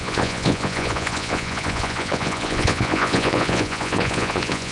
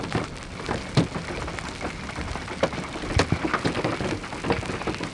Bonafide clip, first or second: second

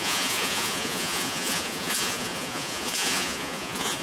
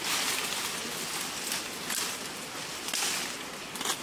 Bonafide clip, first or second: second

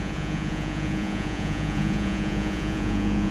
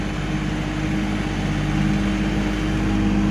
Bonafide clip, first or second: second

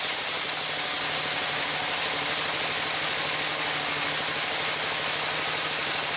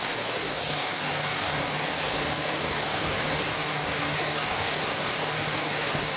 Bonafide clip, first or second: first